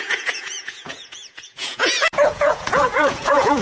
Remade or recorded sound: remade